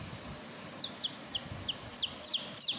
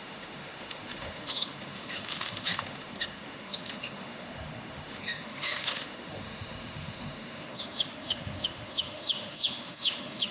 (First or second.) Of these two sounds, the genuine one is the first